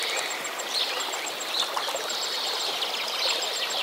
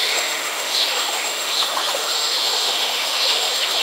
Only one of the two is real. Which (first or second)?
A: first